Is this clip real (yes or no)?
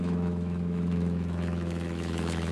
no